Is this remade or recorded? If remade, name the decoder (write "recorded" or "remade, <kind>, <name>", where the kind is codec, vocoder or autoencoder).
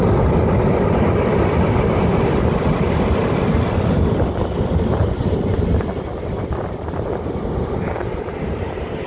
recorded